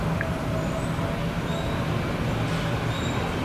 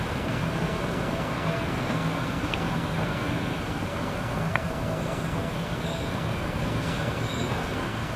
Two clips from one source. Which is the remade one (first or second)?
second